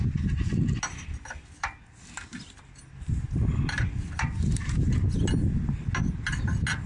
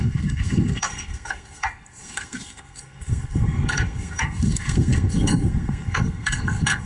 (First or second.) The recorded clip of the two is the first